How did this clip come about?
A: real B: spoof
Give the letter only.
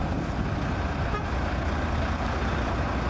A